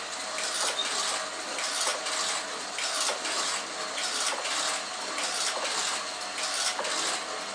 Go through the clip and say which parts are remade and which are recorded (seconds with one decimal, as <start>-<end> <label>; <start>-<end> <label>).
0.0-7.5 recorded